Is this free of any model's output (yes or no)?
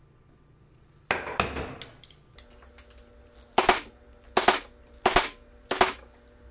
yes